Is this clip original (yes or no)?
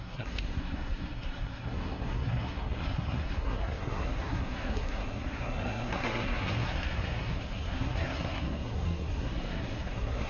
no